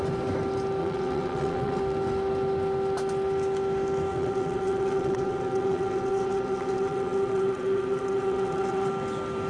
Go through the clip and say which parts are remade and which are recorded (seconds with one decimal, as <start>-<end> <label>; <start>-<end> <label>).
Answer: 0.0-0.8 recorded; 0.8-1.8 remade; 1.8-4.1 recorded; 4.1-8.9 remade; 8.9-9.5 recorded